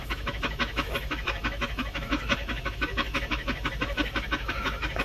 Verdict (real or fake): fake